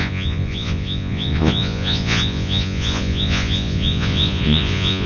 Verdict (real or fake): fake